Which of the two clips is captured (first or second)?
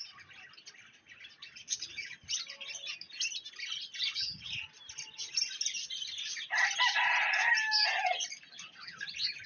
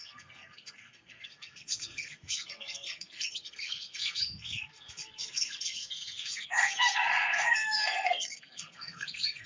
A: first